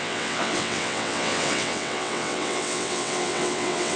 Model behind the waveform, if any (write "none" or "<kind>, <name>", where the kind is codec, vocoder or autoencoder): vocoder, WaveNeXt